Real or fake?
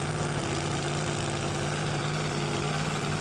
real